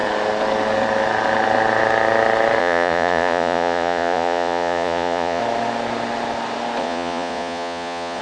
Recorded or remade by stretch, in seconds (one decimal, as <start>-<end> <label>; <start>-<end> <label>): 0.0-2.6 recorded; 2.6-5.4 remade; 5.4-6.8 recorded; 6.8-8.2 remade